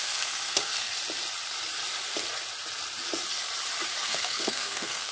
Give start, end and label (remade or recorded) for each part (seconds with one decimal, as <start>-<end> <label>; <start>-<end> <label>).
0.0-0.9 remade; 0.9-4.0 recorded; 4.0-5.1 remade